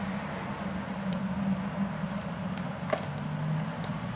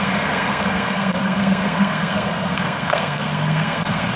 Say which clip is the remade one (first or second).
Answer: second